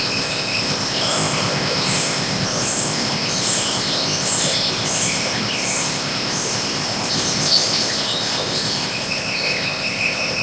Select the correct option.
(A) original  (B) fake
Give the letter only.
B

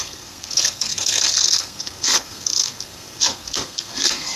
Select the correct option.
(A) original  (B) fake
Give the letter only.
B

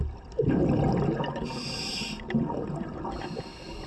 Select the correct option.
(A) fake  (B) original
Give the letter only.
B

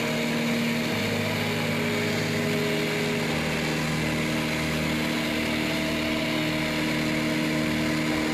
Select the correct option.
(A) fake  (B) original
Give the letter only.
B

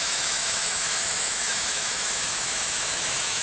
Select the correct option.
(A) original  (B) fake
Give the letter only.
B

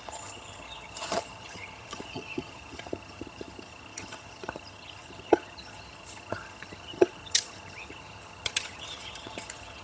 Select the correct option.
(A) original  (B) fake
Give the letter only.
B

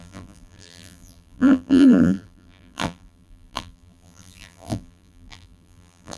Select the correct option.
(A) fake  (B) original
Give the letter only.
A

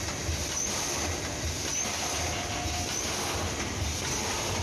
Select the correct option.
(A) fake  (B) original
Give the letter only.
B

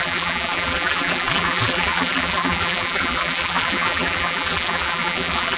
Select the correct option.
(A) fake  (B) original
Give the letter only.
A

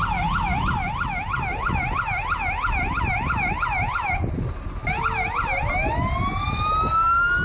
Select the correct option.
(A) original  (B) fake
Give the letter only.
A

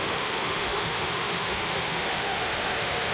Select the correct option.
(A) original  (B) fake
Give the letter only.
B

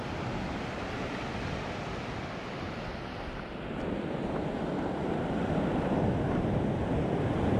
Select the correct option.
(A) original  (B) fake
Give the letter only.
A